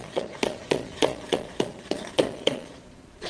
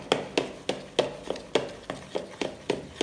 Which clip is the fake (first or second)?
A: first